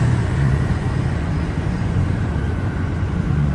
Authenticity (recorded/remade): remade